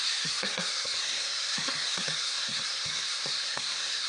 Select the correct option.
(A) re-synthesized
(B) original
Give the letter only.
A